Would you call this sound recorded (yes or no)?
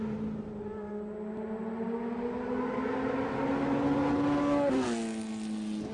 yes